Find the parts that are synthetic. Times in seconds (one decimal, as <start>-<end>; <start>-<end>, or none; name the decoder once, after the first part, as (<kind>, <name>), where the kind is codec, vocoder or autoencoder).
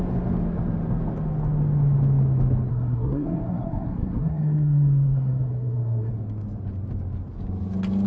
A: 2.7-6.1 (codec, SNAC)